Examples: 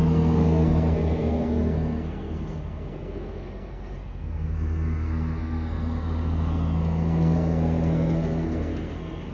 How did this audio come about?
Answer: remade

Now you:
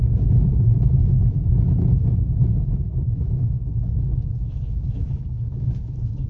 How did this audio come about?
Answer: remade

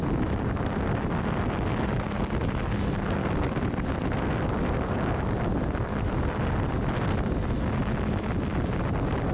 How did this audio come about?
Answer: recorded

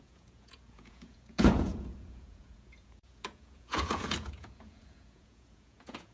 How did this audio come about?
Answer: remade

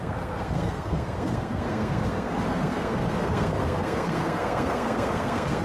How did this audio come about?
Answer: remade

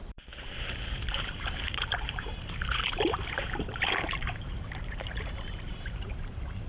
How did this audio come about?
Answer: remade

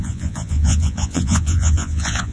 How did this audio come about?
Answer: remade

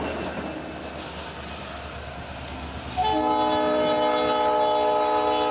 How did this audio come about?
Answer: recorded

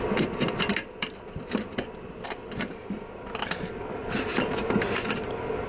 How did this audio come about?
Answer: recorded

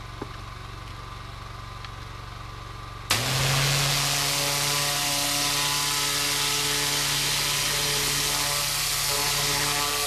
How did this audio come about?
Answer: recorded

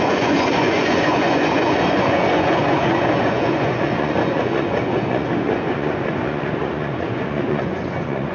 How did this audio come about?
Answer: remade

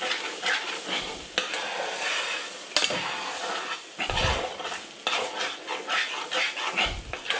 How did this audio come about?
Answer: recorded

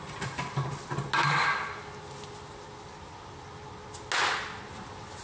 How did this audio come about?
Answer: recorded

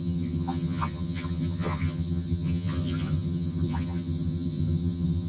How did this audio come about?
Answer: remade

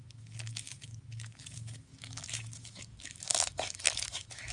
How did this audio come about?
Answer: remade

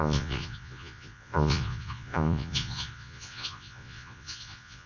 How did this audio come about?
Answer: remade